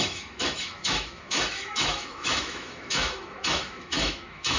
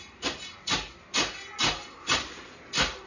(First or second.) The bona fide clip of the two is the second